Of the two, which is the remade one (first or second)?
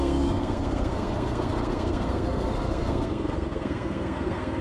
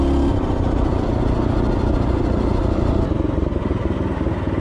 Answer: first